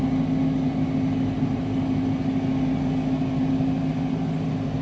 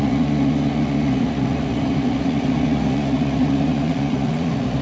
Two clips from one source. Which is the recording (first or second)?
first